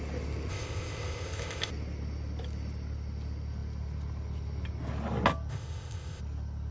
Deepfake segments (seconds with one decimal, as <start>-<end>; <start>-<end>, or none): 0.5-1.7; 5.5-6.2